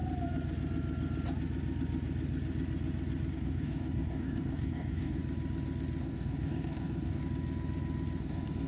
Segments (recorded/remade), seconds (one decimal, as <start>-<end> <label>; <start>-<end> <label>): 0.0-3.3 recorded; 3.3-5.2 remade; 5.2-6.0 recorded; 6.0-7.2 remade; 7.2-8.2 recorded; 8.2-8.7 remade